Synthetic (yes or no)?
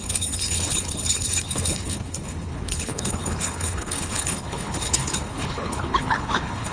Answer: yes